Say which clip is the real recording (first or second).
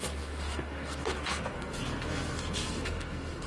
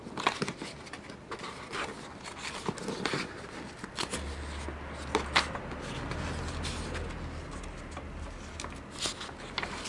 second